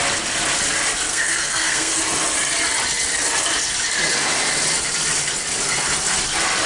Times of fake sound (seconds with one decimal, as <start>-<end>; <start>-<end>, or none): 1.1-2.0